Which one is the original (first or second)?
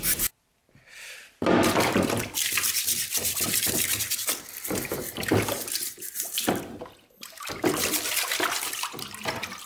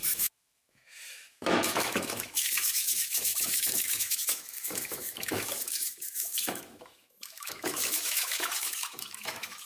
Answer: first